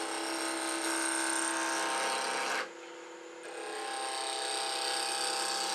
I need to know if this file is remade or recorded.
recorded